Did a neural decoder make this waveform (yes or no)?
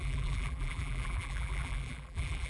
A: yes